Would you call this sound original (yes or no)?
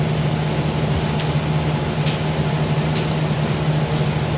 yes